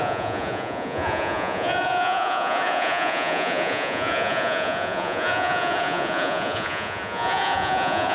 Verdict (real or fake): fake